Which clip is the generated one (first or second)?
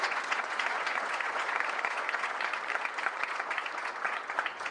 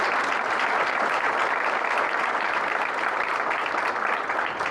first